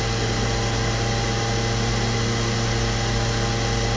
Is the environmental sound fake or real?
real